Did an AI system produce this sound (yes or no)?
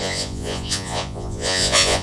yes